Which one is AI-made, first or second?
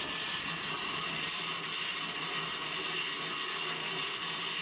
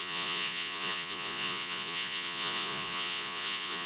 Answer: second